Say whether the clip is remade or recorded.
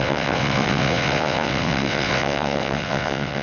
remade